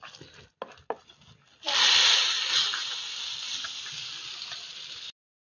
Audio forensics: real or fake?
real